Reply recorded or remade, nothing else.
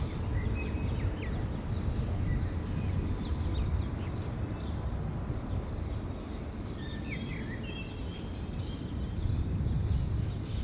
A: recorded